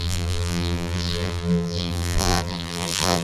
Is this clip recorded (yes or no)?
no